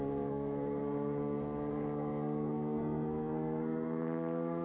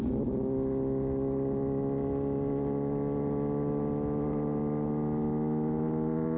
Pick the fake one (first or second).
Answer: first